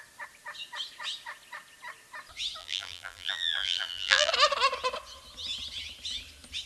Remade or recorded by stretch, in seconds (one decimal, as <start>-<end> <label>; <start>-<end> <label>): 0.0-2.6 recorded; 2.6-4.3 remade; 4.3-6.7 recorded